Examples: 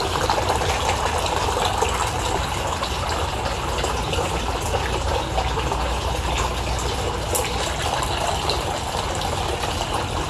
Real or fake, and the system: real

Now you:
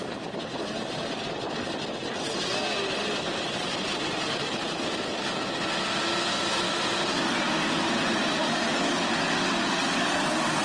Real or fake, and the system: real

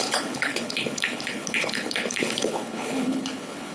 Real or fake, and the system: fake, codec, HILCodec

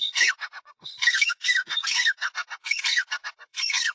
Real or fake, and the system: fake, codec, SNAC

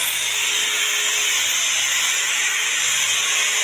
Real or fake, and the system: real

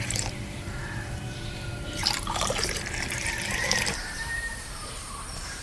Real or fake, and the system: fake, vocoder, BigVGAN v2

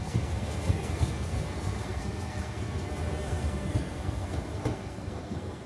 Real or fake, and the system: fake, codec, SNAC